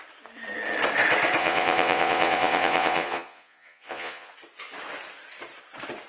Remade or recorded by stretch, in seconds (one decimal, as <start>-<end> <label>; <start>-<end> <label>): 0.0-1.4 recorded; 1.4-4.3 remade; 4.3-6.1 recorded